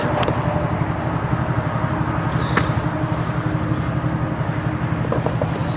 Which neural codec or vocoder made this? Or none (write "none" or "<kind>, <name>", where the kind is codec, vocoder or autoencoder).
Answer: none